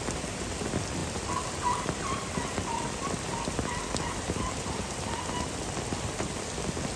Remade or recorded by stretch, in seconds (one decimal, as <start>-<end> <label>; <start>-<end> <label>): 0.0-7.0 recorded